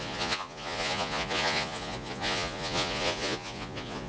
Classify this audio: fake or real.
fake